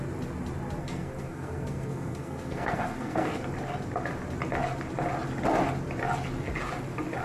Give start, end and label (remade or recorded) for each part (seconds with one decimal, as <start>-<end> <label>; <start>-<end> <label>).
0.0-0.8 recorded; 0.8-3.4 remade; 3.4-7.2 recorded